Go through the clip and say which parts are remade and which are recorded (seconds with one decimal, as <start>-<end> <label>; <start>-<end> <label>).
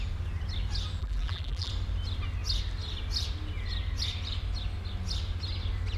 0.0-1.0 recorded; 1.0-1.7 remade; 1.7-6.0 recorded